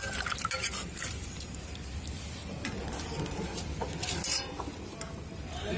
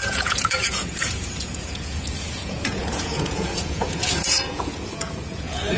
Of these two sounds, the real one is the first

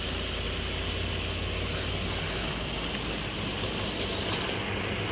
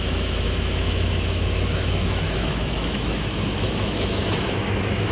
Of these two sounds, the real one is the first